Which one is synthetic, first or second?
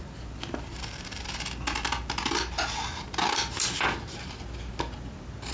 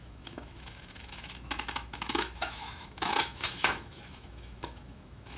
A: second